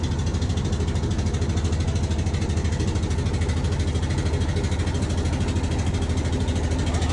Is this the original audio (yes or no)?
yes